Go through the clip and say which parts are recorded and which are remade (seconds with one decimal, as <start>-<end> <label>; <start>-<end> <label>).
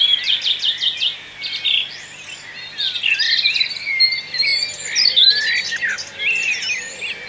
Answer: 0.0-7.3 recorded